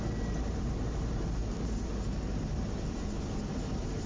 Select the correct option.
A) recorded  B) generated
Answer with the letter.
A